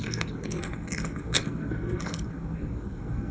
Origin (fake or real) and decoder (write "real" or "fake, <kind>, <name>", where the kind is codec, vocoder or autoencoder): fake, codec, SNAC